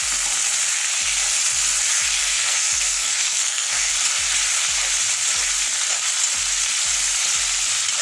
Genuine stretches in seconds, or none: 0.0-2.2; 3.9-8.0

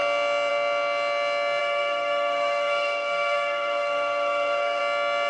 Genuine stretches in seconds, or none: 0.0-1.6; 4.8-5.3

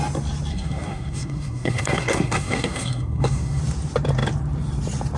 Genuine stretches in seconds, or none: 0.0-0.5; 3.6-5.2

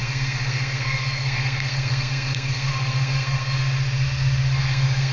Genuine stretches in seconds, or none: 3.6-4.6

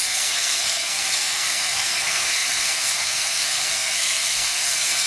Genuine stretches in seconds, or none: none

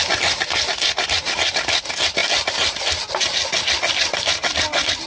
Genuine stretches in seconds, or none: 0.0-5.1

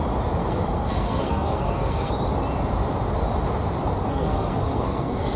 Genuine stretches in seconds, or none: 0.0-0.4; 2.1-4.1